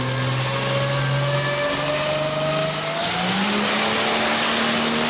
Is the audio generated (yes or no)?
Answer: no